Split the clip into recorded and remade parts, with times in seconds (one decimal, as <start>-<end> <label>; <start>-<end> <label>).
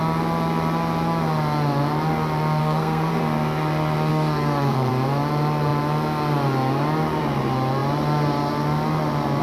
0.0-2.6 recorded; 2.6-3.2 remade; 3.2-4.1 recorded; 4.1-4.9 remade; 4.9-9.4 recorded